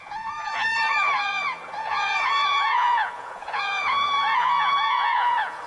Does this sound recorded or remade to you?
remade